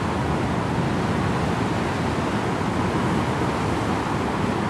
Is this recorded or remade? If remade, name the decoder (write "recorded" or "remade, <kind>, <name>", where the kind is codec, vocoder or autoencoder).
recorded